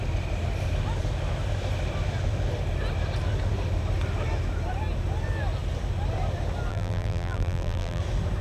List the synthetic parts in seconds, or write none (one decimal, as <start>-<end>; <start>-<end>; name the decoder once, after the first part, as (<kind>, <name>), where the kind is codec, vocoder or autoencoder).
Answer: 6.7-8.0 (vocoder, BigVGAN v2)